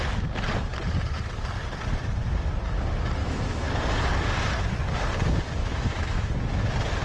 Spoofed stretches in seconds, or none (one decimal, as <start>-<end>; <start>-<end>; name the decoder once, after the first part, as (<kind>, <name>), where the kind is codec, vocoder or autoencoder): 3.2-3.7 (autoencoder, DAC-VAE); 5.6-6.3